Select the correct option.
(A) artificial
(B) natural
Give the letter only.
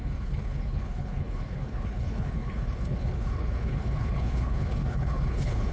A